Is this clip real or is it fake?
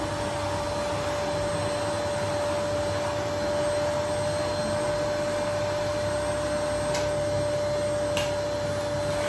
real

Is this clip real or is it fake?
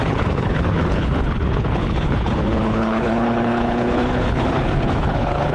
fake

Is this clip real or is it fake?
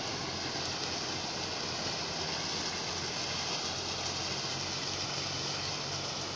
real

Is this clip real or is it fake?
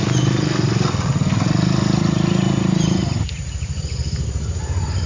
real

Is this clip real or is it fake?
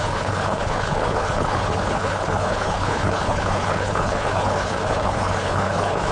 fake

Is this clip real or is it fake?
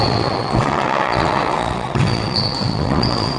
fake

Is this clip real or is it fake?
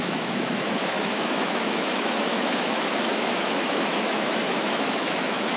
fake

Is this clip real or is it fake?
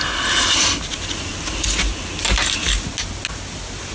real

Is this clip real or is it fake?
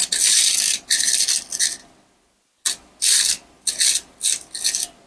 real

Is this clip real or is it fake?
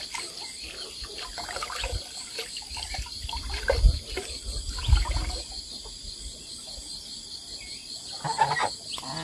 real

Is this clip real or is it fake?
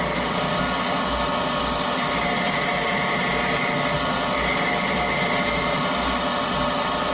real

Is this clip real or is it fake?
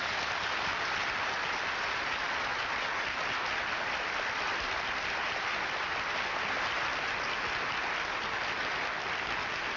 real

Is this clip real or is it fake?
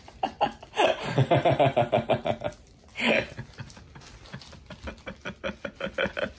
real